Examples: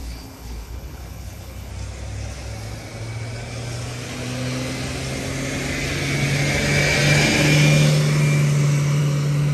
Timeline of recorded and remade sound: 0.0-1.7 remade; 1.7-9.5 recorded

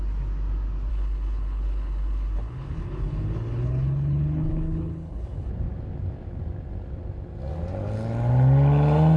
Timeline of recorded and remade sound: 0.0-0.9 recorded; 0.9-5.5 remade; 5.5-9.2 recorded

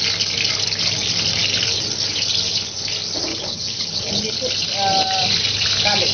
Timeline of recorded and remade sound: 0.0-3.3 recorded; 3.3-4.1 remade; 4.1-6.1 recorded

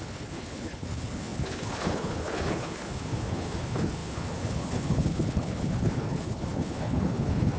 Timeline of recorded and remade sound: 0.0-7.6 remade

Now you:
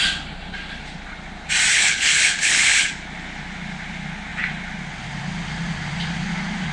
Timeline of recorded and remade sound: 0.0-1.7 recorded; 1.7-2.9 remade; 2.9-6.7 recorded